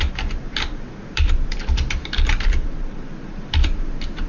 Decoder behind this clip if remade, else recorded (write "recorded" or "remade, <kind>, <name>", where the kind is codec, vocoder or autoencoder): remade, vocoder, BigVGAN v2